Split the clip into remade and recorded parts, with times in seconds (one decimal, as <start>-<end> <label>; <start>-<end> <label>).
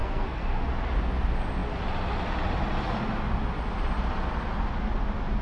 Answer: 0.0-0.7 remade; 0.7-5.4 recorded